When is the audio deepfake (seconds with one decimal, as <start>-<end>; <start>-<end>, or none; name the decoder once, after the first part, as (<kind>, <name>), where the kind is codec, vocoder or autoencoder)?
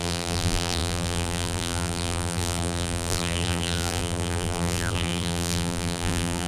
0.0-6.5 (vocoder, BigVGAN v2)